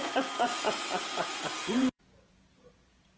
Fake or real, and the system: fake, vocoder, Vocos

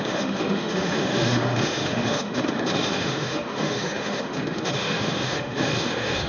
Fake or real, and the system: fake, autoencoder, DAC-VAE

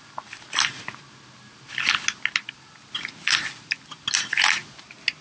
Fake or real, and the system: real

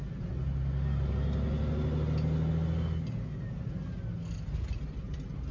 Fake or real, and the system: real